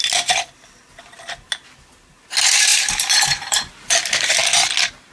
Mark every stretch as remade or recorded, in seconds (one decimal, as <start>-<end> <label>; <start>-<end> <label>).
0.0-2.7 recorded; 2.7-3.7 remade; 3.7-5.1 recorded